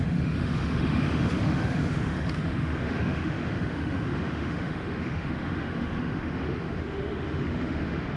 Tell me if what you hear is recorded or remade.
remade